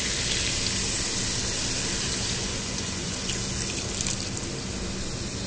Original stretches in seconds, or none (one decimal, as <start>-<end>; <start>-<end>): 0.0-2.4; 3.3-5.5